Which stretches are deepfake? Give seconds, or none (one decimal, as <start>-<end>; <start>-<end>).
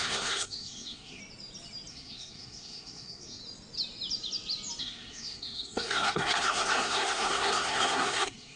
0.0-1.2; 1.9-3.4; 4.8-8.6